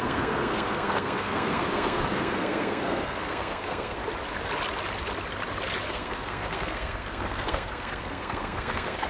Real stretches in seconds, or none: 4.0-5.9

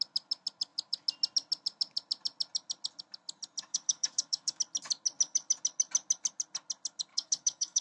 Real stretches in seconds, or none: 0.0-3.7; 4.6-7.1

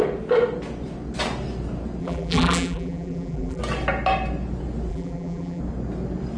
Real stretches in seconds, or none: 0.0-2.0; 3.6-4.9; 5.6-6.4

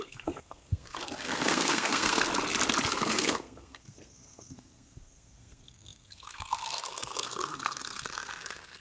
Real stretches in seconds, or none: 2.3-2.9

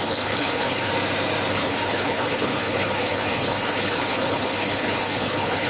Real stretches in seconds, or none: 0.9-1.5

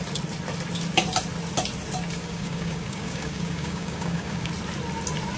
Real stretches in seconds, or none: 0.0-2.2; 4.5-5.4

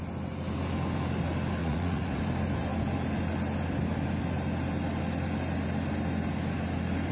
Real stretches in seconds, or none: 0.0-1.6; 2.2-7.1